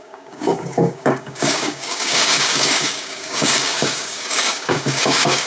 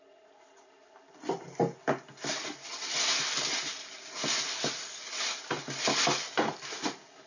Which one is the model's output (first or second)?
first